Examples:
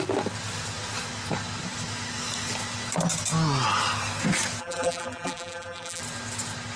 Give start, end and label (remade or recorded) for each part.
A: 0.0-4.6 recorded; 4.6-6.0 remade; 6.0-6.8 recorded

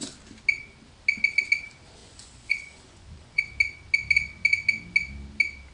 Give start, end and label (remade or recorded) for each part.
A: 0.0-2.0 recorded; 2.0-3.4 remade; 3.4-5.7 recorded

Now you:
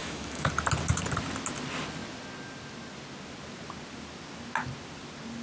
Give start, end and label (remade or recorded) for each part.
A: 0.0-0.5 remade; 0.5-5.4 recorded

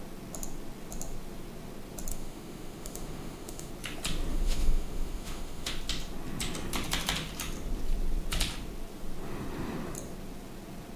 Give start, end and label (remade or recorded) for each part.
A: 0.0-2.1 recorded; 2.1-3.7 remade; 3.7-4.3 recorded; 4.3-5.7 remade; 5.7-11.0 recorded

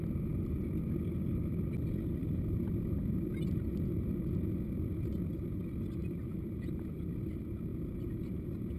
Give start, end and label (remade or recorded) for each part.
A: 0.0-2.2 recorded; 2.2-3.3 remade; 3.3-6.0 recorded; 6.0-7.0 remade; 7.0-7.7 recorded; 7.7-8.8 remade

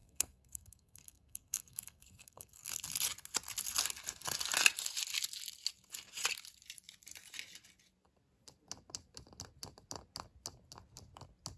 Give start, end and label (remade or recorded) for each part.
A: 0.0-2.7 remade; 2.7-11.6 recorded

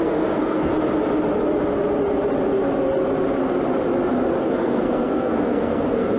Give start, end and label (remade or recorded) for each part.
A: 0.0-0.7 remade; 0.7-4.4 recorded; 4.4-6.2 remade